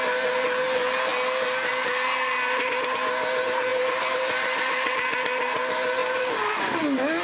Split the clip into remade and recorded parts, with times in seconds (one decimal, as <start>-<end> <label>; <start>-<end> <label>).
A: 0.0-3.7 recorded; 3.7-4.9 remade; 4.9-6.0 recorded; 6.0-6.8 remade; 6.8-7.2 recorded